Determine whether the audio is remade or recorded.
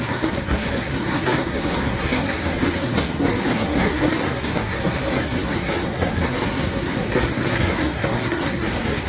remade